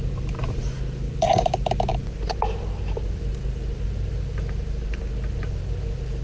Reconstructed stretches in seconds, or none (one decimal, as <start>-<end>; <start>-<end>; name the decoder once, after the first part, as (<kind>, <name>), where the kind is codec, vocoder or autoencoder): none